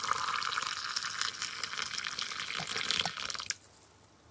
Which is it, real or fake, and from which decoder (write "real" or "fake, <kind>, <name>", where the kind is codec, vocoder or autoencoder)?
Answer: real